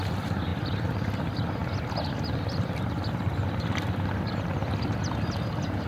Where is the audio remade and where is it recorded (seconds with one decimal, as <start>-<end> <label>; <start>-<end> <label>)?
0.0-5.9 recorded